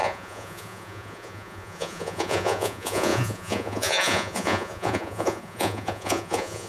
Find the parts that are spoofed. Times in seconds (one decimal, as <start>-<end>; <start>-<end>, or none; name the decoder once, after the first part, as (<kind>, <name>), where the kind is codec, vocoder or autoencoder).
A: 0.0-6.7 (vocoder, Vocos)